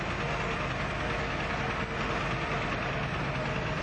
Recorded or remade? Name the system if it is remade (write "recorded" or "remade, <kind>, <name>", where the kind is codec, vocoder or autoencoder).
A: recorded